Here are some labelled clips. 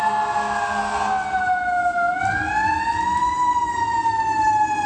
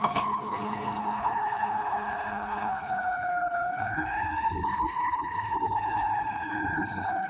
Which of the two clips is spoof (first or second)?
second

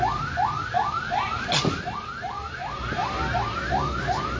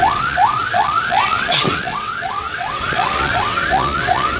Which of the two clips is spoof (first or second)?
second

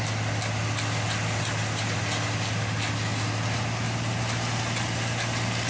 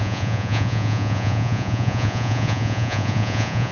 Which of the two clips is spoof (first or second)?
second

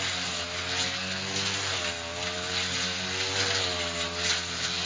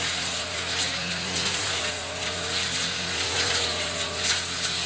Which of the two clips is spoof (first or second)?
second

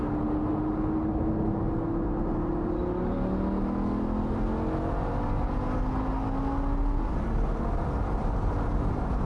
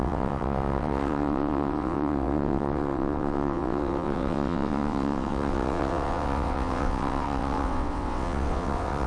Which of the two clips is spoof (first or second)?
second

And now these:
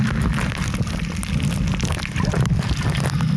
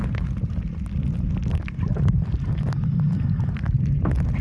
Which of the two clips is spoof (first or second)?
first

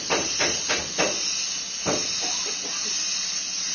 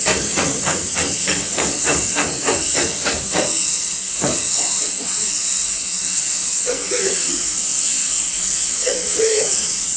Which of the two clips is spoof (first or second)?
second